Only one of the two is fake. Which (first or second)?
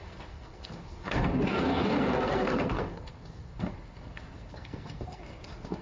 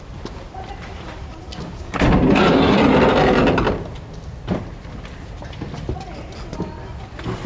first